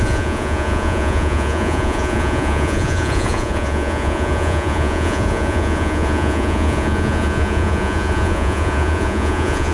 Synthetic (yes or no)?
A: yes